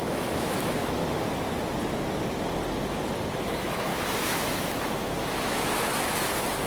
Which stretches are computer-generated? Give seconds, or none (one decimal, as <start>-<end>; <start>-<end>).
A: 0.0-1.0; 3.3-6.7